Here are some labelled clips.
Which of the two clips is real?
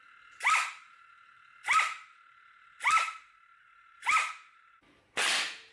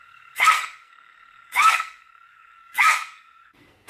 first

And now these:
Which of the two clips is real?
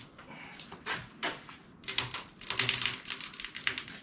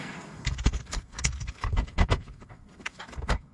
first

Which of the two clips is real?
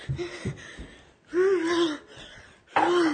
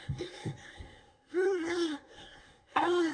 first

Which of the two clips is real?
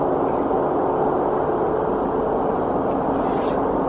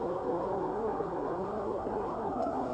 first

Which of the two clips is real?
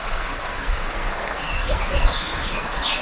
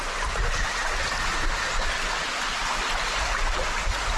second